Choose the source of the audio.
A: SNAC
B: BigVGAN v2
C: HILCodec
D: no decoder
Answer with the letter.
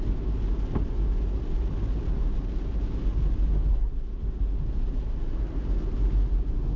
D